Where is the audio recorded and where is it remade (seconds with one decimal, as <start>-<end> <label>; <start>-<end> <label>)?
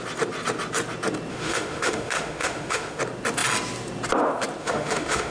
0.0-1.3 recorded; 1.3-3.0 remade; 3.0-4.6 recorded; 4.6-5.3 remade